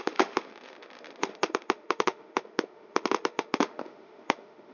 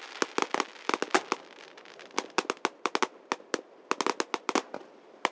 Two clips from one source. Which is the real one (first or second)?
second